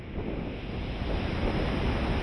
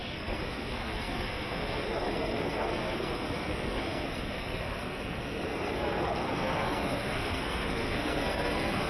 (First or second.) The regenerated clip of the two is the second